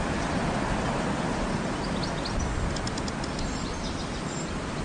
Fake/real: real